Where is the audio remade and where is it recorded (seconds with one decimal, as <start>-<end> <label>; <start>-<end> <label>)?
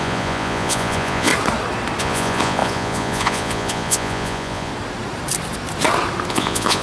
0.0-1.3 remade; 1.3-2.0 recorded; 2.0-4.7 remade; 4.7-6.3 recorded; 6.3-6.8 remade